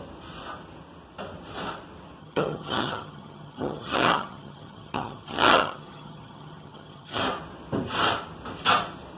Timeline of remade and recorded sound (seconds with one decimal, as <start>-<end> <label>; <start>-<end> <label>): 0.0-2.2 recorded; 2.2-7.2 remade; 7.2-9.2 recorded